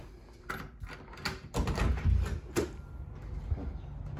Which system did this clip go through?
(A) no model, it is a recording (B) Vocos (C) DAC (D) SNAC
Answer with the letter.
A